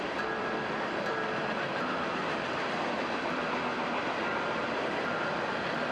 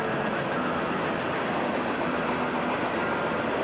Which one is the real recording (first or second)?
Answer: second